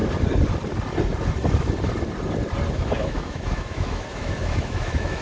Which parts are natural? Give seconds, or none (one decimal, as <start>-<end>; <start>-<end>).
0.0-2.7